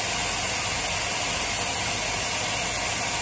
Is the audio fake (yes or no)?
no